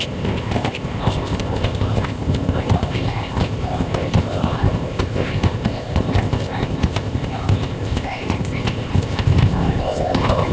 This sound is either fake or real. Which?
fake